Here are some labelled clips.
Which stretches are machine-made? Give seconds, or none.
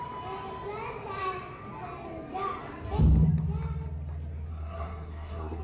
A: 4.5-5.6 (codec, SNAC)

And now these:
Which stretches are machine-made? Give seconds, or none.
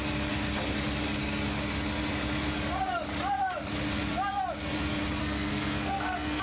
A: 5.2-6.4 (codec, SNAC)